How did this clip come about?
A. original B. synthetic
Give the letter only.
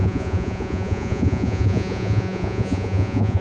B